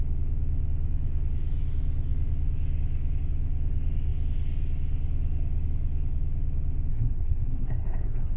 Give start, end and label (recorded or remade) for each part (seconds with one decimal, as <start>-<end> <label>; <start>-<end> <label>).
0.0-6.9 recorded; 6.9-8.4 remade